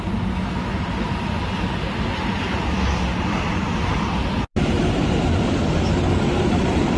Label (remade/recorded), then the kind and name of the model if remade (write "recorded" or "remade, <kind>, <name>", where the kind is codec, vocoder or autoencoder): recorded